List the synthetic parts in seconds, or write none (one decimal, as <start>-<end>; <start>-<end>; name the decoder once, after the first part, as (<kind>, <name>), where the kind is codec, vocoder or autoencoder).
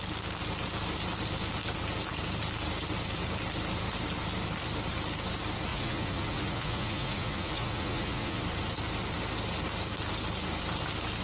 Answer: 5.7-8.4 (vocoder, Vocos)